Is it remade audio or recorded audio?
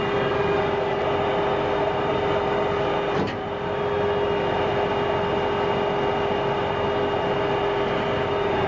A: recorded